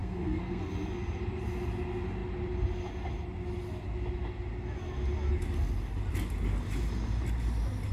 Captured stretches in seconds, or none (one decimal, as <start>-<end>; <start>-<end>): 0.7-7.9